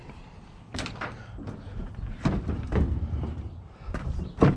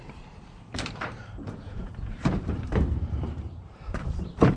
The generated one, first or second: second